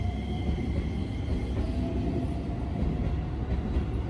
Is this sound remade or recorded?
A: recorded